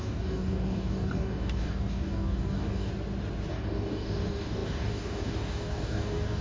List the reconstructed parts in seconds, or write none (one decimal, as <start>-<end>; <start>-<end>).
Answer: 0.0-2.9; 3.5-6.4